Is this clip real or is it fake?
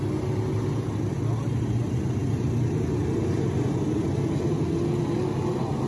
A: real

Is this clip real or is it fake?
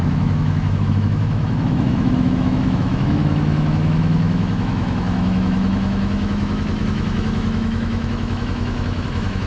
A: fake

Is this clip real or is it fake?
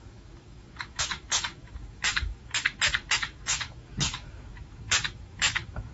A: fake